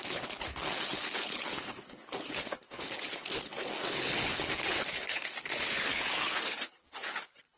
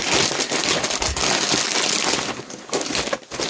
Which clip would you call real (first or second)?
second